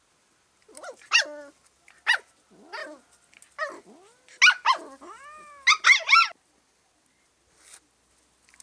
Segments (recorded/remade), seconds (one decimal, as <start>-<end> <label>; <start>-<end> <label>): 0.0-8.6 recorded